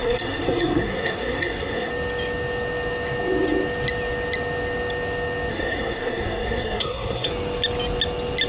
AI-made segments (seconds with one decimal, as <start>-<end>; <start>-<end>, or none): 0.0-1.9; 5.5-7.3